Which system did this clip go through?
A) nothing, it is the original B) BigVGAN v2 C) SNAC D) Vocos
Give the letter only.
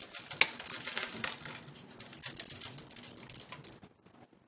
A